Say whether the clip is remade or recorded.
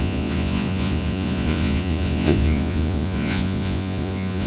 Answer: remade